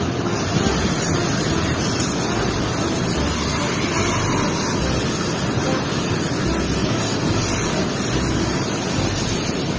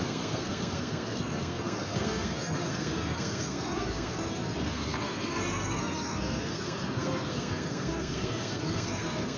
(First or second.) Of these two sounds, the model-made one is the second